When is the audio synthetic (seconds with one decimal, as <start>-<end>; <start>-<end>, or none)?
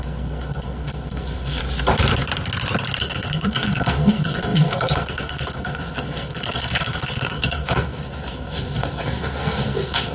0.0-1.6; 3.0-10.1